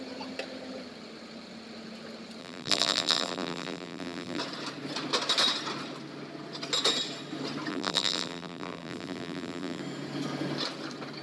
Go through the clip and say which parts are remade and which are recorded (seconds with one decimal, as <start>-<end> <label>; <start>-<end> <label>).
0.0-2.4 recorded; 2.4-4.4 remade; 4.4-7.7 recorded; 7.7-9.8 remade; 9.8-11.2 recorded